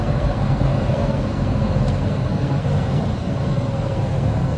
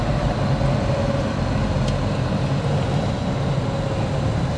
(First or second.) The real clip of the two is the second